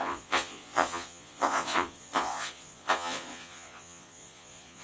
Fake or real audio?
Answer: fake